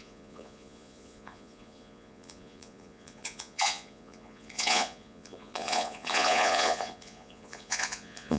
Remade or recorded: remade